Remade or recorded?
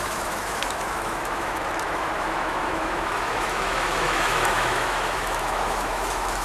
remade